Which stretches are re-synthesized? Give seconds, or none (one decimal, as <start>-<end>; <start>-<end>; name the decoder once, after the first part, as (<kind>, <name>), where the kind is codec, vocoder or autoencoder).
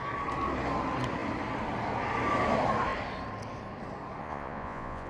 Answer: 4.2-5.1 (vocoder, Vocos)